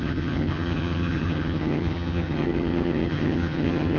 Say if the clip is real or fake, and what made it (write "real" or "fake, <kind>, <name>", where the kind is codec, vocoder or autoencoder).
fake, vocoder, HiFi-GAN